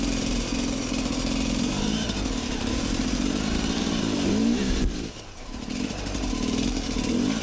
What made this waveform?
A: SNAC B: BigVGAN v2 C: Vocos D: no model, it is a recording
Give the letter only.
B